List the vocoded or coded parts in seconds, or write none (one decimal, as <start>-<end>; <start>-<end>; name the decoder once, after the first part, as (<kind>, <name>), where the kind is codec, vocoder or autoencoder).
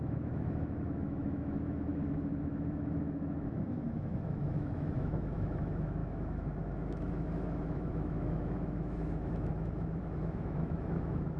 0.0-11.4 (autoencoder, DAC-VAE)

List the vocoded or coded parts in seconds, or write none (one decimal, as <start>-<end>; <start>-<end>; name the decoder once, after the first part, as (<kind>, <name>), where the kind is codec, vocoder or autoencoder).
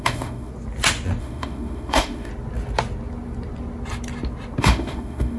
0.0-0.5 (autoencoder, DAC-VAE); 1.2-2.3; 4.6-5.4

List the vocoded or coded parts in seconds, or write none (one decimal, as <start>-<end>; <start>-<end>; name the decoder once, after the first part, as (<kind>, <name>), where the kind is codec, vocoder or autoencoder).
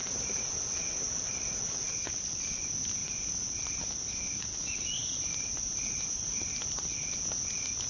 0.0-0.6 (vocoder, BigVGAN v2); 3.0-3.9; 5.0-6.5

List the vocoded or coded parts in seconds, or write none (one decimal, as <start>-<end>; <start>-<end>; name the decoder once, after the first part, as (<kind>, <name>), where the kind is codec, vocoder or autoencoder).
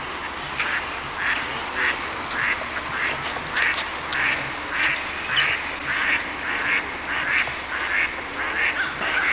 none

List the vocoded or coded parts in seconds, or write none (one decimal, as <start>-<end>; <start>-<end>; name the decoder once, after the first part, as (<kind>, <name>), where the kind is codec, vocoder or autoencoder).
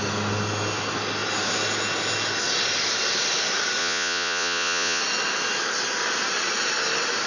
3.8-5.0 (vocoder, Vocos)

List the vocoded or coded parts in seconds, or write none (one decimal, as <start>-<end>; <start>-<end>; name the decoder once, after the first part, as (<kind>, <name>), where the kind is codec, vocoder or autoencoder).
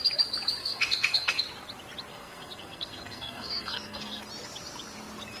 0.6-1.4 (codec, SNAC); 2.1-4.2